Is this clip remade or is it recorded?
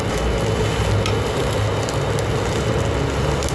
recorded